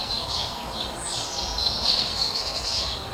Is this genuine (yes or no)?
no